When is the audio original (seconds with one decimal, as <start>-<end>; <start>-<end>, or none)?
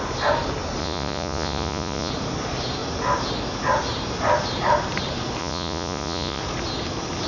0.0-0.8; 2.1-5.4; 6.4-7.3